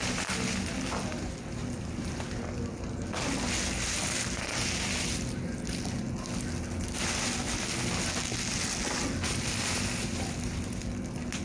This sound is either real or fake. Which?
real